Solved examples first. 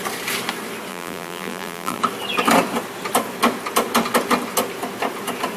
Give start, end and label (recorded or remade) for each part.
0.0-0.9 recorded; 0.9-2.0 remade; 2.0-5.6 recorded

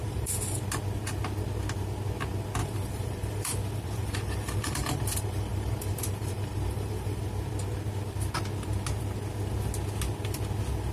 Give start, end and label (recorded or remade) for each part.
0.0-0.6 remade; 0.6-2.6 recorded; 2.6-7.2 remade; 7.2-10.9 recorded

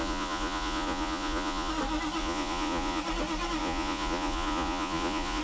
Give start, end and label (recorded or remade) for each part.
0.0-1.7 remade; 1.7-2.2 recorded; 2.2-3.0 remade; 3.0-3.6 recorded; 3.6-5.4 remade

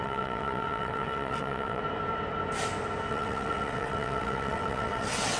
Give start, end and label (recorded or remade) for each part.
0.0-1.8 remade; 1.8-3.1 recorded; 3.1-5.4 remade